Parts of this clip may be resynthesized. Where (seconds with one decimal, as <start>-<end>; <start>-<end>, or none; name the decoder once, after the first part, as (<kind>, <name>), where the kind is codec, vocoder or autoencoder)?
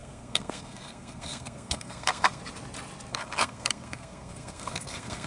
0.0-2.4 (codec, SNAC); 3.1-5.3